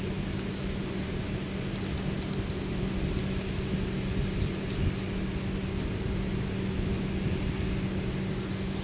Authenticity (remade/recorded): recorded